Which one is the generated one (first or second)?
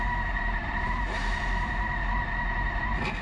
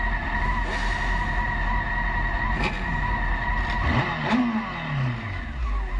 first